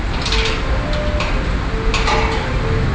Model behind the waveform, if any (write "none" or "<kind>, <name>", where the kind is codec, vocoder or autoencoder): none